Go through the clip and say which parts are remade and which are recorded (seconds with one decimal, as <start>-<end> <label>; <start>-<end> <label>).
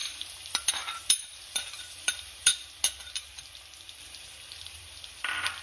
0.0-2.5 remade; 2.5-4.0 recorded; 4.0-5.6 remade